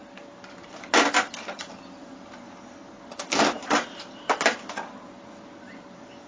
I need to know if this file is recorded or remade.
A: recorded